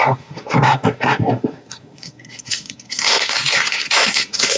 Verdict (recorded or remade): remade